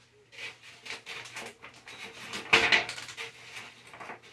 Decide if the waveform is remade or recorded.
recorded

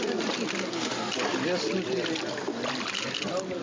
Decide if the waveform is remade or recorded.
recorded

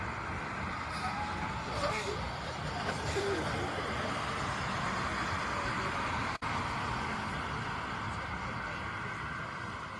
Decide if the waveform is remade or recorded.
recorded